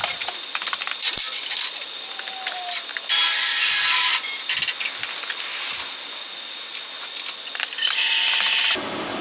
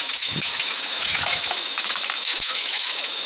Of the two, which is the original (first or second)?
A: first